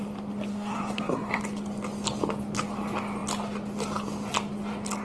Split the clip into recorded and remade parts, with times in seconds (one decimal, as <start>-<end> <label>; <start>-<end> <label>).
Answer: 0.0-0.5 recorded; 0.5-1.4 remade; 1.4-5.0 recorded